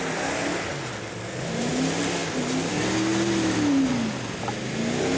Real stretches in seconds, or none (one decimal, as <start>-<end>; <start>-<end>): 0.0-5.2